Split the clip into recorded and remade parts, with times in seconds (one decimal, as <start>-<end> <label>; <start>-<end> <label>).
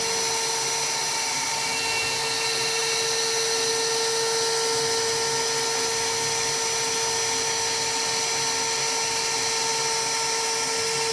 0.0-11.1 recorded